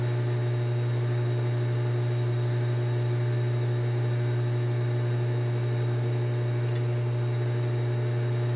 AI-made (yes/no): no